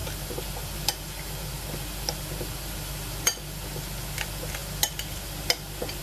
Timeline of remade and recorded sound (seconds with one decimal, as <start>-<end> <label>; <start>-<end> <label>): 0.0-6.0 recorded